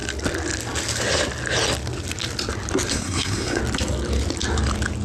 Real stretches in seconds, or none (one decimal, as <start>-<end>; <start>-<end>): 0.0-2.9; 3.6-5.0